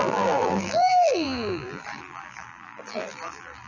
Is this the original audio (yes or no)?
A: no